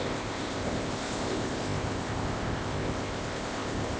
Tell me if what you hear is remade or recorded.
remade